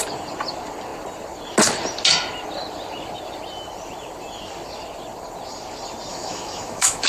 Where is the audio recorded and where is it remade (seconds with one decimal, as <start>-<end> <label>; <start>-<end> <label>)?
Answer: 0.0-6.1 recorded; 6.1-7.1 remade